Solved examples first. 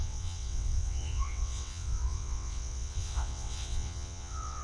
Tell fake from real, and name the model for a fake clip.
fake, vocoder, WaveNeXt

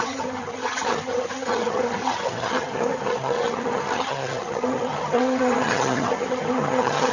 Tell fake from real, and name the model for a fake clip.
fake, vocoder, HiFi-GAN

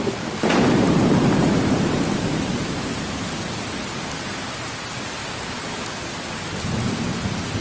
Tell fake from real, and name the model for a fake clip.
real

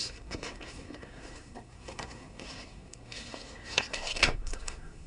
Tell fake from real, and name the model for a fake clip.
fake, codec, SNAC